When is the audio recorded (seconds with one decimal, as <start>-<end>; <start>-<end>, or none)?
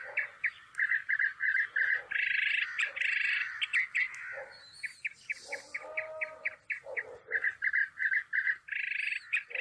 1.1-3.7; 4.8-7.8; 9.1-9.6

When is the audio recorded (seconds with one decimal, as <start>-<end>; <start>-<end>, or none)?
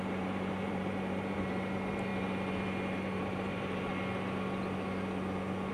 2.1-3.2; 3.9-5.7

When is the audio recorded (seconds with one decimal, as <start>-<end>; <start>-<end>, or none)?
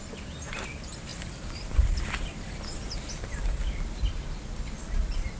0.0-1.1; 4.1-5.4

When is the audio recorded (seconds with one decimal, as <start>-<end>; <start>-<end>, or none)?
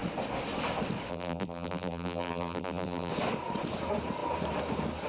0.0-1.1; 3.1-5.1